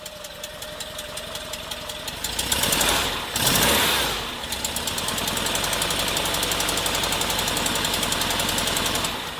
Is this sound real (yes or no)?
yes